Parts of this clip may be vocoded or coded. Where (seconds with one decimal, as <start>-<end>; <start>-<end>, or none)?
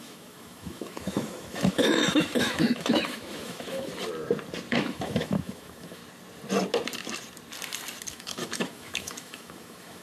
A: 0.0-3.9; 4.7-6.0; 8.1-10.0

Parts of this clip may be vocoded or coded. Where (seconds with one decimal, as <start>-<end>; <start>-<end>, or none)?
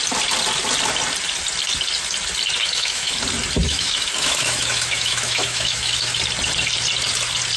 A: 2.6-3.2; 3.6-6.2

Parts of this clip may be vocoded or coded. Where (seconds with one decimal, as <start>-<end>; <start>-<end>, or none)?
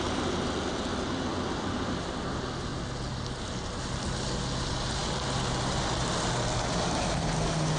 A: none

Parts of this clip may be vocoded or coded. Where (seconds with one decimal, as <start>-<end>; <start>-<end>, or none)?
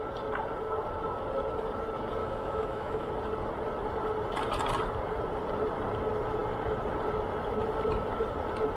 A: 2.2-3.1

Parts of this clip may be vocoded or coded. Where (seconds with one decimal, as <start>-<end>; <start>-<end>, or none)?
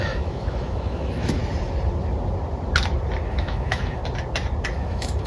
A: 0.0-1.4; 3.3-4.0; 4.7-5.3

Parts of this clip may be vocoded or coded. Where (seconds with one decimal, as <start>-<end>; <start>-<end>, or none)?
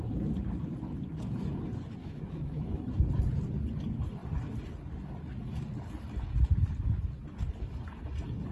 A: 2.0-2.8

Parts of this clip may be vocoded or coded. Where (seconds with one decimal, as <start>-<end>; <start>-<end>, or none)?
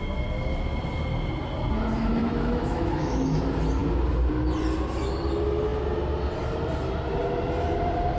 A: 2.2-3.4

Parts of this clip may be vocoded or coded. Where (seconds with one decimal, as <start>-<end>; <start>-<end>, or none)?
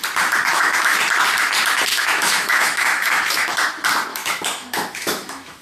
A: 0.5-1.0; 1.9-3.5; 4.1-5.6